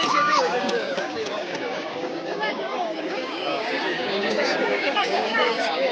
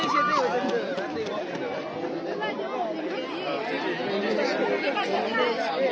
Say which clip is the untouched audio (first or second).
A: second